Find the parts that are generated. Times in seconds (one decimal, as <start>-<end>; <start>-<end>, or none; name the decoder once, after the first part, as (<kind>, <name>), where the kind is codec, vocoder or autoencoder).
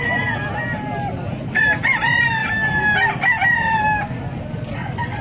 none